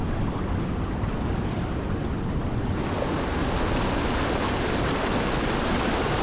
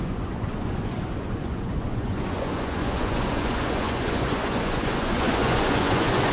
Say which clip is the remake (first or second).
second